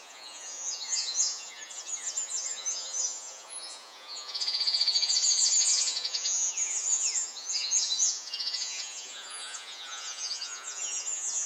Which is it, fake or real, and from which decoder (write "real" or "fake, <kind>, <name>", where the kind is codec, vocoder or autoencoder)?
fake, vocoder, Vocos